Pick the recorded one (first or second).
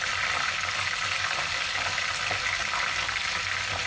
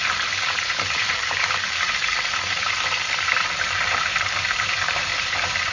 first